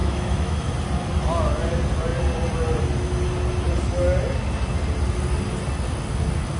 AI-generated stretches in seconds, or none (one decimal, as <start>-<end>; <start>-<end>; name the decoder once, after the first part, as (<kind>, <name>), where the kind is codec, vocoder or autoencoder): 0.0-0.7 (autoencoder, DAC-VAE)